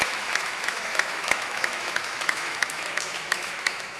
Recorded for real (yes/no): no